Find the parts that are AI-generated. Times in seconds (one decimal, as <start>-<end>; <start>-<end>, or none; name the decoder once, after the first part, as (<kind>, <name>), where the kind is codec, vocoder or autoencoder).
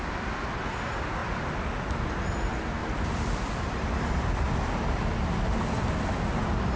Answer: 2.8-4.5 (vocoder, BigVGAN v2)